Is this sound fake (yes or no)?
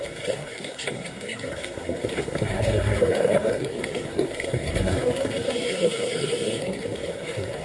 yes